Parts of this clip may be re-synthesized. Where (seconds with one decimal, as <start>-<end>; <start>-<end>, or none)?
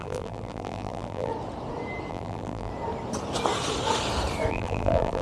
0.0-1.3; 2.1-2.7; 4.5-5.2